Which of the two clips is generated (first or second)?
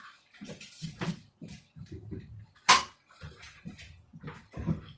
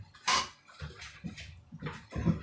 second